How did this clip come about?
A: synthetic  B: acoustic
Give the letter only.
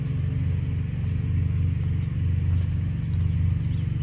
B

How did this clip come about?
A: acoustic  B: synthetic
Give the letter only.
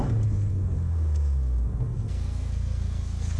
B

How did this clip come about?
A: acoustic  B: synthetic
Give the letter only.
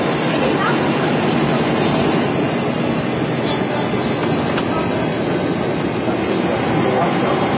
A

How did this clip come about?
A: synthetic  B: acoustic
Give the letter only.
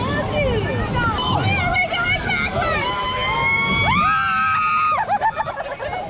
B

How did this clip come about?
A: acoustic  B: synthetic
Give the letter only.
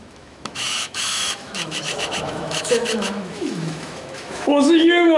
B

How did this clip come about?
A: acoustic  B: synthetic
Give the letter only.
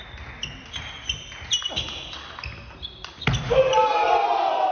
A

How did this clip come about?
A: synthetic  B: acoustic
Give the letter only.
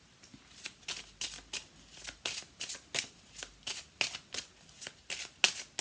B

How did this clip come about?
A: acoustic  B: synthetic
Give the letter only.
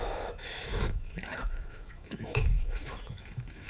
B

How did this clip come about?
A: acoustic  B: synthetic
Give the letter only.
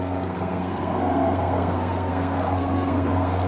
B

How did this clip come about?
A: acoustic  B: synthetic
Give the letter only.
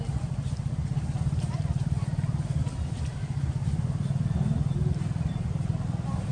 A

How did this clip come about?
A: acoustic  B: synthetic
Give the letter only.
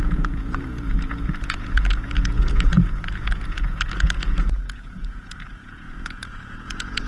B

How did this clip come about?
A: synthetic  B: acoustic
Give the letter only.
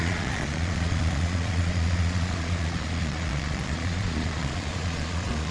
A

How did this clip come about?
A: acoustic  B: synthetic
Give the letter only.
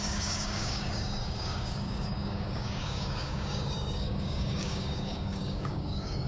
B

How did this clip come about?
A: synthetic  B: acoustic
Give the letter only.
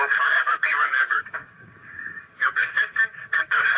A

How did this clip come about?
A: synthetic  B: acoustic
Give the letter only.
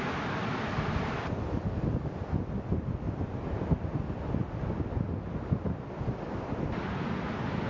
B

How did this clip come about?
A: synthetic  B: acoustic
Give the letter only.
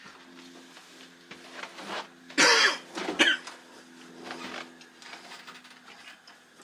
B